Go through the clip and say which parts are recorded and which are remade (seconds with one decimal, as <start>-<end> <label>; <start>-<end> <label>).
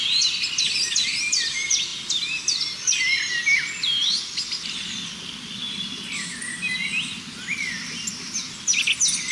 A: 0.0-9.3 recorded